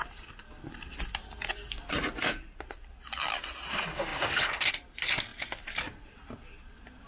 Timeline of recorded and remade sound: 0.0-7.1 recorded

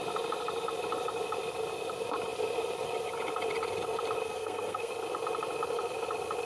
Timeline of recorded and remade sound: 0.0-4.2 recorded; 4.2-4.9 remade; 4.9-6.5 recorded

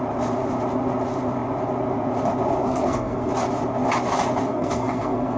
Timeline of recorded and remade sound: 0.0-2.6 recorded; 2.6-3.3 remade; 3.3-4.5 recorded; 4.5-5.4 remade